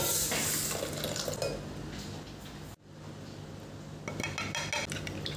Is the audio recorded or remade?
recorded